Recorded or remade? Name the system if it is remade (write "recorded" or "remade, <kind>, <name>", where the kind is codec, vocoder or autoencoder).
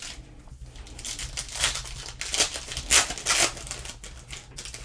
recorded